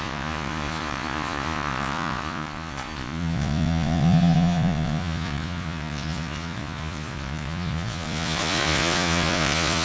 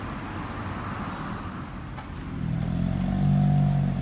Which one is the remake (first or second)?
first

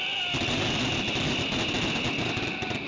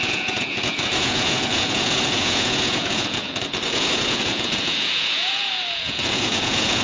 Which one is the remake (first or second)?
second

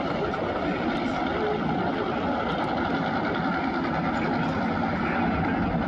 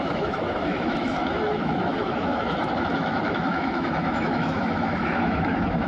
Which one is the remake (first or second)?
second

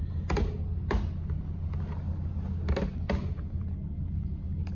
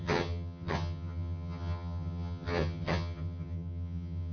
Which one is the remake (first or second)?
second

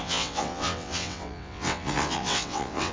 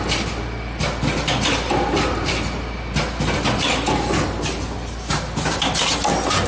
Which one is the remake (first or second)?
first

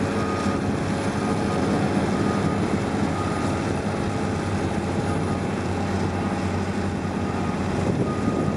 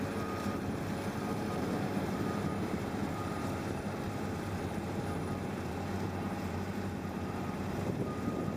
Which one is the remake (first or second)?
second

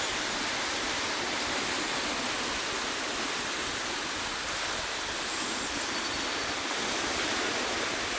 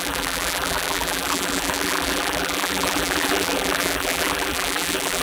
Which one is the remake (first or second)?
second